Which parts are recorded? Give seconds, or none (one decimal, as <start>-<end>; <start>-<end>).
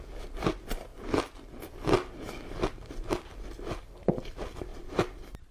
0.0-4.7